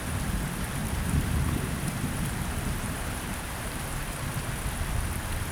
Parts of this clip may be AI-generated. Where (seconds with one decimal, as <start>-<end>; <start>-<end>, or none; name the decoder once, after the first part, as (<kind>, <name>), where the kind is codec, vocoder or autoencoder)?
0.8-4.1 (vocoder, BigVGAN v2)